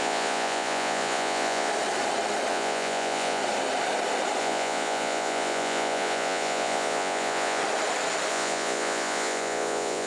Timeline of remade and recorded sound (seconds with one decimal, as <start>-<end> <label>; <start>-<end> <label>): 0.0-1.7 remade; 1.7-2.5 recorded; 2.5-3.4 remade; 3.4-4.4 recorded; 4.4-7.6 remade; 7.6-8.3 recorded; 8.3-10.1 remade